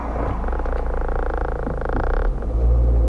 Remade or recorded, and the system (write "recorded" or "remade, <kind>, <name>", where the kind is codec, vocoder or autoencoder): recorded